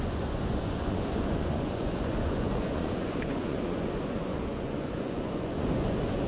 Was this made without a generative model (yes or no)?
no